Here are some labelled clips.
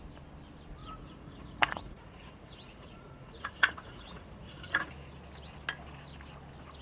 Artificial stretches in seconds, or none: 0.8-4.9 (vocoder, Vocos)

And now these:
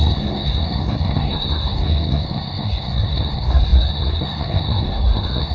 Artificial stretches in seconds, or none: 0.0-5.5 (codec, SNAC)

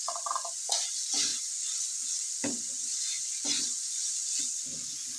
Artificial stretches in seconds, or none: none

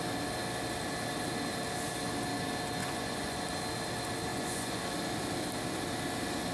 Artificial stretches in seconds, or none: 2.8-3.4 (vocoder, Vocos); 4.3-4.8